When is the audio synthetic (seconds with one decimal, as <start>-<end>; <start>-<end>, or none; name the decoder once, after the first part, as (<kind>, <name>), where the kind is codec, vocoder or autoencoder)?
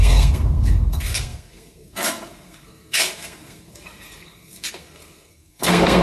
0.0-6.0 (codec, SNAC)